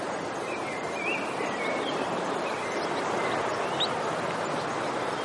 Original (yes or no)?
yes